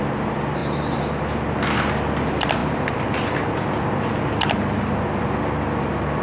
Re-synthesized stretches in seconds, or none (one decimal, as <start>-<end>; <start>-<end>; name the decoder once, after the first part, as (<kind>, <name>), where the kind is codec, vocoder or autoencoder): none